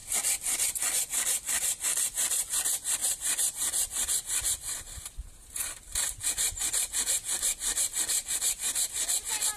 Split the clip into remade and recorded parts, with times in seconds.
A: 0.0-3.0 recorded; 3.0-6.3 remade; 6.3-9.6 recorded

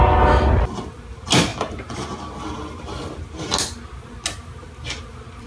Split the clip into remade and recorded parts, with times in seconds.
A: 0.0-5.5 recorded

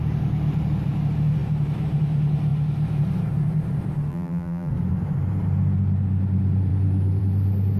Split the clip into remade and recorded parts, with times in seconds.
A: 0.0-4.1 recorded; 4.1-4.7 remade; 4.7-7.8 recorded

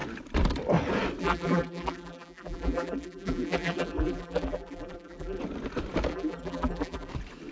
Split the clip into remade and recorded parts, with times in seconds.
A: 0.0-1.2 recorded; 1.2-5.4 remade; 5.4-6.1 recorded; 6.1-7.1 remade; 7.1-7.5 recorded

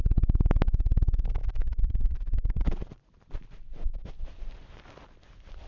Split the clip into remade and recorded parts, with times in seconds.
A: 0.0-1.4 recorded; 1.4-4.8 remade; 4.8-5.7 recorded